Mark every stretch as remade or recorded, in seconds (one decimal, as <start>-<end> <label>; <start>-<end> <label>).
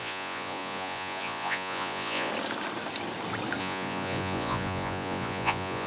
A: 0.0-2.3 remade; 2.3-3.6 recorded; 3.6-5.9 remade